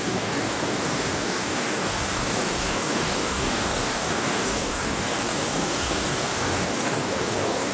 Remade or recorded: remade